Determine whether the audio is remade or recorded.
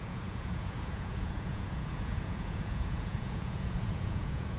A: remade